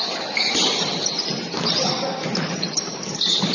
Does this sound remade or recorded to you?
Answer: recorded